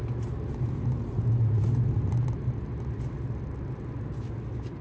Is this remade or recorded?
recorded